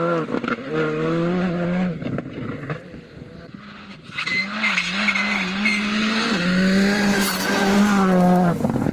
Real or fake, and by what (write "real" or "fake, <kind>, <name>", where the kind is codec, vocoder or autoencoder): real